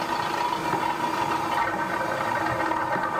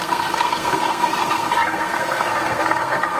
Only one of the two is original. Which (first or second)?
first